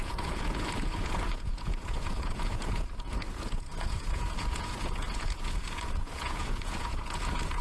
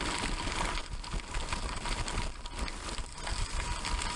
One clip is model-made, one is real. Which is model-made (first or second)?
first